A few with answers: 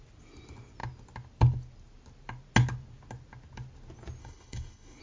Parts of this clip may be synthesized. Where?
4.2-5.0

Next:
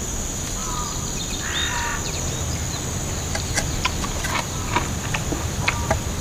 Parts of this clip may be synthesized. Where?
0.0-0.6; 3.4-6.2

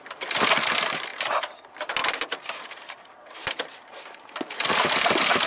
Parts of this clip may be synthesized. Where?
1.1-1.6; 2.0-5.5

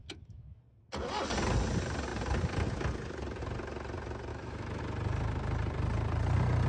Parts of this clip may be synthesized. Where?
0.0-0.6; 4.3-4.8

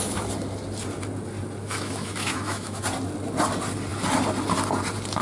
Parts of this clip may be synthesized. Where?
1.6-2.8

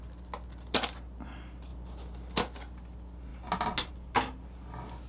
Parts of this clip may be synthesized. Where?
none

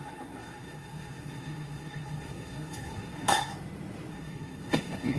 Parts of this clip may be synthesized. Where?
0.0-3.5; 4.1-5.2